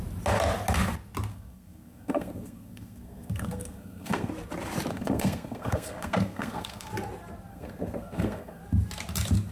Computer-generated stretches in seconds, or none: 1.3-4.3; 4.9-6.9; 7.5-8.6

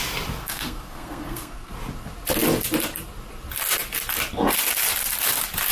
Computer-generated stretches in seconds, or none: 0.4-1.7

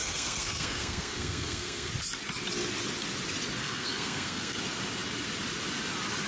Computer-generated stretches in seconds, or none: 0.0-1.9; 3.6-4.6

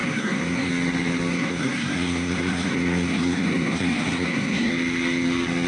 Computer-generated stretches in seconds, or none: 0.0-0.7; 1.3-4.7

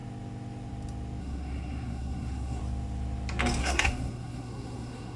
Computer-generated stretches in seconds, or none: 1.2-2.6; 3.6-5.2

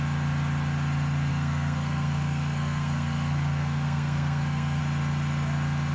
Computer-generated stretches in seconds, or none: 1.3-4.8